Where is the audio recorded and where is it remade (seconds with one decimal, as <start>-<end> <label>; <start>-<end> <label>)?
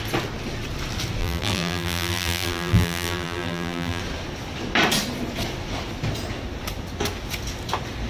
0.0-1.2 recorded; 1.2-4.0 remade; 4.0-8.1 recorded